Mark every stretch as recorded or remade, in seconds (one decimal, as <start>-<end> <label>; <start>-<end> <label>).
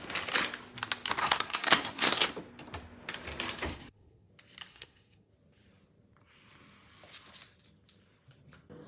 0.0-1.2 recorded; 1.2-2.3 remade; 2.3-3.7 recorded; 3.7-4.3 remade; 4.3-4.7 recorded; 4.7-5.3 remade; 5.3-8.9 recorded